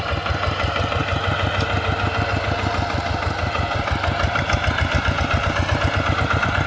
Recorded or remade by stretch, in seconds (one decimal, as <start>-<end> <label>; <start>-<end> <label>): 0.0-6.7 recorded